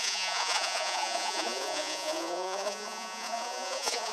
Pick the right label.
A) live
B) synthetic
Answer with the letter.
B